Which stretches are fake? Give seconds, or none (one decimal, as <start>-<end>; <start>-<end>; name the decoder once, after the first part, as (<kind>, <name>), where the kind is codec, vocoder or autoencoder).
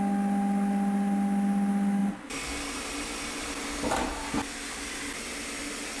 none